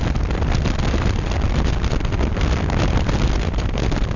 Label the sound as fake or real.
real